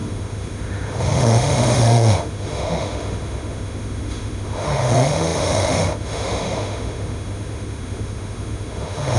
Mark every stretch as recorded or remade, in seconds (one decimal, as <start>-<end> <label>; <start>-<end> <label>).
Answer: 0.0-9.2 remade